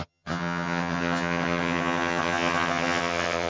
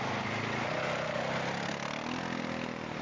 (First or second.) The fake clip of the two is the first